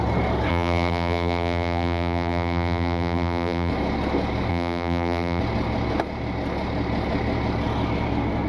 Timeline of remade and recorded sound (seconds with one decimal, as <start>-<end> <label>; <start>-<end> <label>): 0.0-0.5 recorded; 0.5-3.7 remade; 3.7-4.5 recorded; 4.5-5.4 remade; 5.4-8.5 recorded